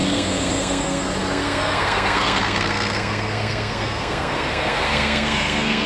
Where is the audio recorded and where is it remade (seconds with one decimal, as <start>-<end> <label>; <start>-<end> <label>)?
0.0-5.9 remade